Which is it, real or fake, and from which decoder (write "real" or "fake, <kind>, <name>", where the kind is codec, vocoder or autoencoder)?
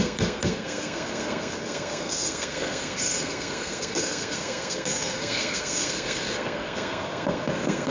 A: fake, codec, SNAC